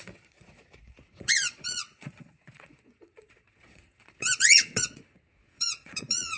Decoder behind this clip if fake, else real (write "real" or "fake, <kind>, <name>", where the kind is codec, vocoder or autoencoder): fake, vocoder, Vocos